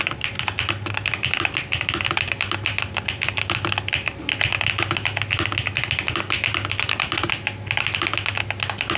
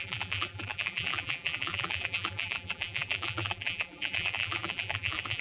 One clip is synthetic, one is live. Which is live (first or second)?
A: first